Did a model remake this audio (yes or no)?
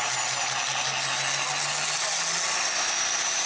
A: no